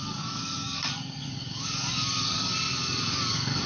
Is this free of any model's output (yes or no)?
no